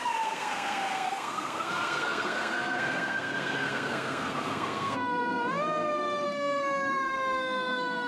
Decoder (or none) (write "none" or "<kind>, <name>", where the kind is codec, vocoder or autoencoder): codec, SNAC